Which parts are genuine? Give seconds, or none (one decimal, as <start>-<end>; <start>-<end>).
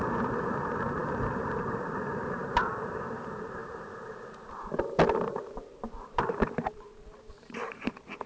none